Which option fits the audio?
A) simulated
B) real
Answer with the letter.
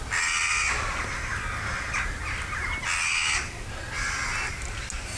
B